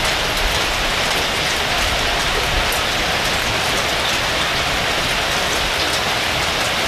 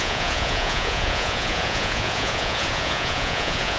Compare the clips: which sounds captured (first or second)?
first